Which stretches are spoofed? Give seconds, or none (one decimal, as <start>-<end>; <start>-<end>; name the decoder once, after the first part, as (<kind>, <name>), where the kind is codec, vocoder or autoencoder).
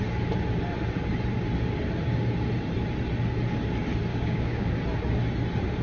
4.1-4.7 (codec, DAC)